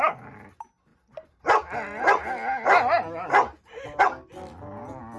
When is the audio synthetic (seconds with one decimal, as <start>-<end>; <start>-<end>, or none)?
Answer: none